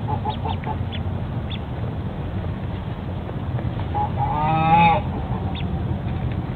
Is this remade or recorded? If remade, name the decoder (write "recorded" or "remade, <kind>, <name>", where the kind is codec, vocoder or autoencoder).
recorded